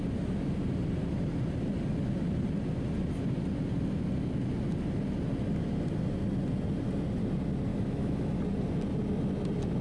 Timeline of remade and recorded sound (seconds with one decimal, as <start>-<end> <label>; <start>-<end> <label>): 0.0-7.7 recorded; 7.7-8.4 remade; 8.4-9.8 recorded